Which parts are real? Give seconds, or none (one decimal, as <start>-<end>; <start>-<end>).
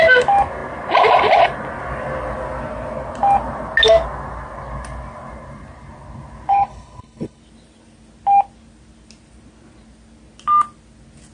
0.0-6.5; 7.4-11.3